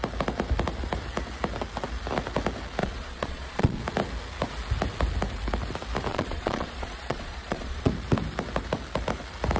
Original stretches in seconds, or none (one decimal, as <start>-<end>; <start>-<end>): 0.0-2.8; 3.8-6.1; 7.9-9.6

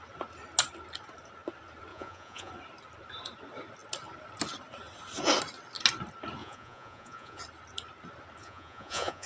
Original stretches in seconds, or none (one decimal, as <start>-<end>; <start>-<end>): 0.0-1.9; 2.5-6.4; 7.4-8.4

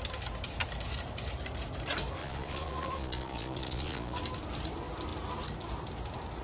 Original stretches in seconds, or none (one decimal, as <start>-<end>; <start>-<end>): 0.0-2.2; 4.2-6.4

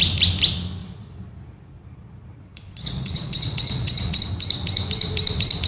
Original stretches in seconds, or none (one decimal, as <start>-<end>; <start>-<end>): 0.0-0.8; 4.2-5.7

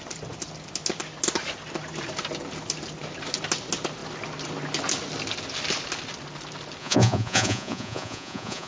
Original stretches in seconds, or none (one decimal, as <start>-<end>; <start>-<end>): 0.0-6.8

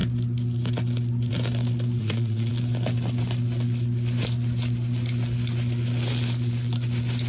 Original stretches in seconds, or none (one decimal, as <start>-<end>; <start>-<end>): 0.0-2.0; 2.5-7.3

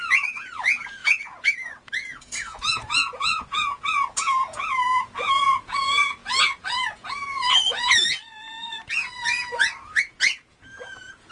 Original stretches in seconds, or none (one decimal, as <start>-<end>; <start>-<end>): none